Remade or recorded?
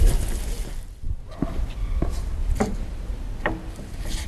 recorded